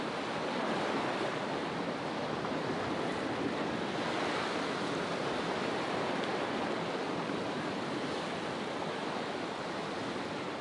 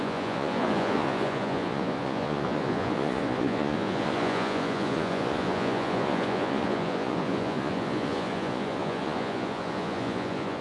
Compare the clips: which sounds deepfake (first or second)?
second